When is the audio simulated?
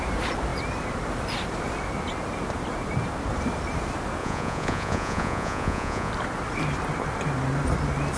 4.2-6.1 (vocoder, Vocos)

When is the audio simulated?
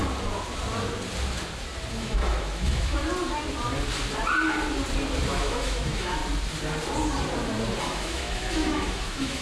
1.9-3.0 (autoencoder, DAC-VAE); 5.3-6.2; 7.8-9.4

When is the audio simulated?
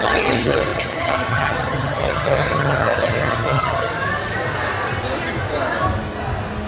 0.0-3.9 (vocoder, HiFi-GAN)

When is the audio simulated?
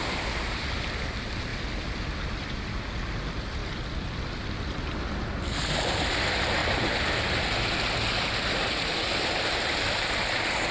none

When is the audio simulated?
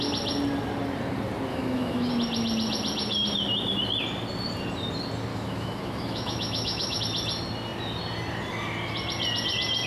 1.5-2.1 (autoencoder, DAC-VAE); 5.3-7.0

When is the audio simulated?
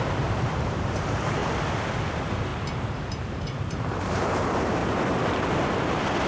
0.0-1.4 (vocoder, BigVGAN v2); 2.1-4.8; 5.6-6.3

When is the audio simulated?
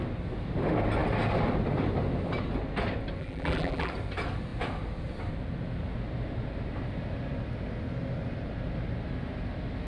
3.2-3.9 (vocoder, BigVGAN v2)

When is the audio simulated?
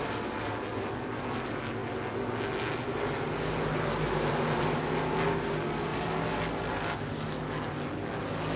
none